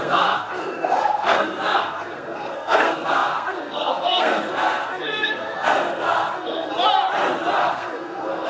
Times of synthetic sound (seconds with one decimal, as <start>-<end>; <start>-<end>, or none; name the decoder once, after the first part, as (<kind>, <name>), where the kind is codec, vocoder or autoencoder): 0.0-6.7 (codec, SNAC); 7.7-8.5